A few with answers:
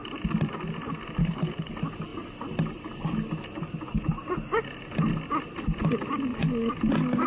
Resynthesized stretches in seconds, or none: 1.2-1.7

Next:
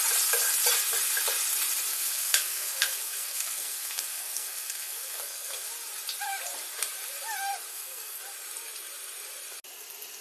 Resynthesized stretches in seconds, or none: 1.9-5.7; 7.7-8.2

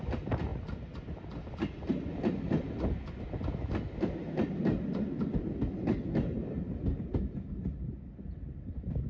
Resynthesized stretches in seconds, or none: none

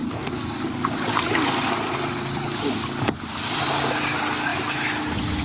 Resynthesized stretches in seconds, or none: none

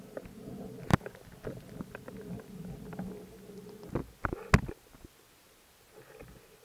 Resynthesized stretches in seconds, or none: none

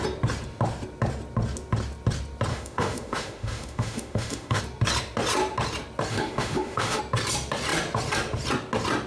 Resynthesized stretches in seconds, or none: 2.5-4.6; 6.1-7.0

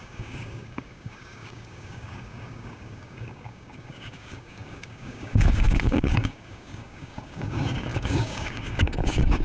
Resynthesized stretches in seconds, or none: 0.0-9.4

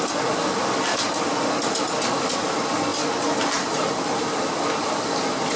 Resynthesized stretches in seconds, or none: none